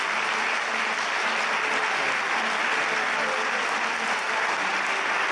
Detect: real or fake real